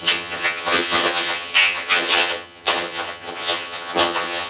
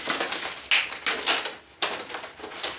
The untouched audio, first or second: second